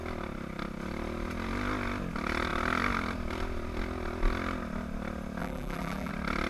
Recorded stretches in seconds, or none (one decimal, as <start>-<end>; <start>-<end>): 0.0-5.4; 6.1-6.5